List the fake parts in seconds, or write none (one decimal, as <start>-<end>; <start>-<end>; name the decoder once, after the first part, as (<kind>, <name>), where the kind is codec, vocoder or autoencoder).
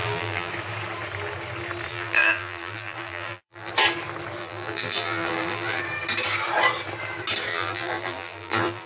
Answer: 0.0-0.5 (vocoder, BigVGAN v2); 1.9-3.7; 4.4-5.8; 7.5-8.9